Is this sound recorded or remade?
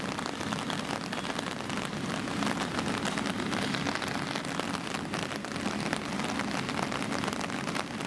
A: recorded